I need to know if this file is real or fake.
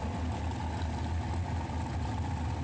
real